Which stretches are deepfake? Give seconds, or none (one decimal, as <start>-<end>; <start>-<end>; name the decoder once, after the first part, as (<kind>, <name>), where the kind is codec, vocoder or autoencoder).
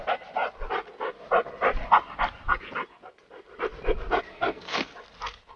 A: 4.3-4.9 (codec, SNAC)